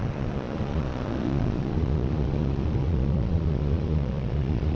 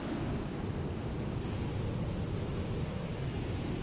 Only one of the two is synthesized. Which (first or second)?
first